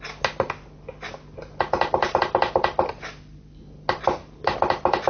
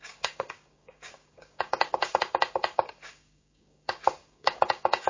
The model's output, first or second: second